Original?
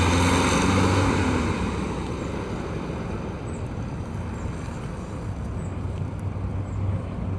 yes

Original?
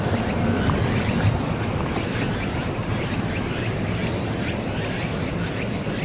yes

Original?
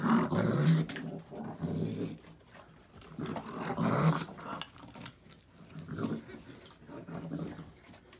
yes